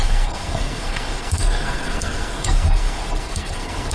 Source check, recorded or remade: remade